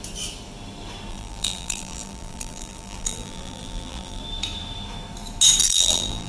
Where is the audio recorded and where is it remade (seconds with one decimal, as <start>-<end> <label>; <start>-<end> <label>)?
0.0-1.1 recorded; 1.1-4.2 remade; 4.2-5.6 recorded; 5.6-6.3 remade